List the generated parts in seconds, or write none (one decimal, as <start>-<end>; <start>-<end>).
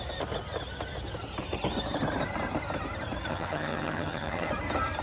3.3-4.5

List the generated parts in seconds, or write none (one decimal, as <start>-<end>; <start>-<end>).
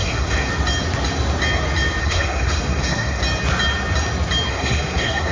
0.0-0.5; 2.0-3.2; 4.5-5.3